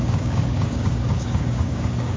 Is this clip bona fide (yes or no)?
no